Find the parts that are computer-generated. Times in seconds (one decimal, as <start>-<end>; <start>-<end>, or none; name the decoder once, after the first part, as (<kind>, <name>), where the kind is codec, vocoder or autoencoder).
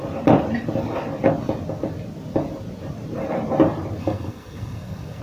4.0-5.2 (codec, SNAC)